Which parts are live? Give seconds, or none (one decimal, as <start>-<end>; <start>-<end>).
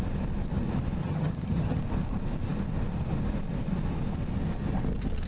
0.0-1.0; 1.8-5.3